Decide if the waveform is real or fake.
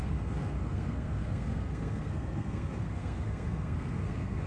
fake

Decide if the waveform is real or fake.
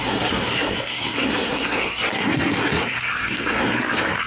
fake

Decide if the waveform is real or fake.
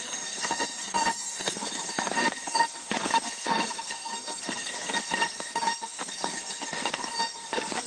fake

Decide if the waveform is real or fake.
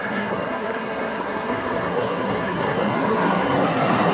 fake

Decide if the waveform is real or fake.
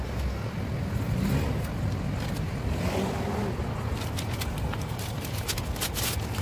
real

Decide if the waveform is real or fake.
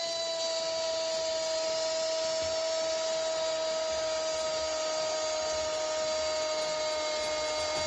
real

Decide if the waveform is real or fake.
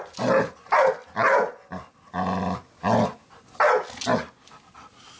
real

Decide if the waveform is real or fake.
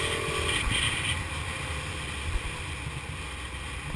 real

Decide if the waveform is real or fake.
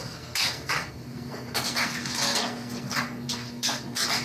fake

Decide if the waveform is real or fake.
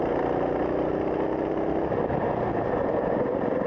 real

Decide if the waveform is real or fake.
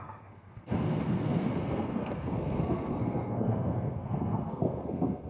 fake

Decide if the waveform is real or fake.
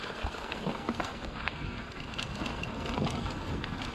fake